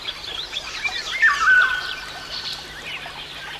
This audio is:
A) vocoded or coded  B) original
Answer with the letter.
A